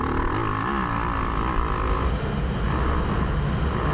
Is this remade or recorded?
recorded